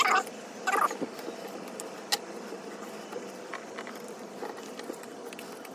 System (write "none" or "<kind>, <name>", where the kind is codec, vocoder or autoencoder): none